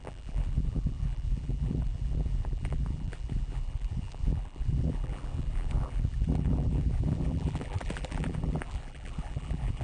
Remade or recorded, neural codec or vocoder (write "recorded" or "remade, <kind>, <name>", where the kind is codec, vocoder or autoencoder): remade, vocoder, BigVGAN v2